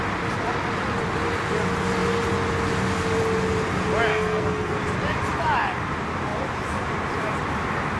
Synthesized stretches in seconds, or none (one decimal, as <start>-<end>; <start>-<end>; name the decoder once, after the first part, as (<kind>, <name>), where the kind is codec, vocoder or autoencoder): 4.1-4.8 (codec, SNAC)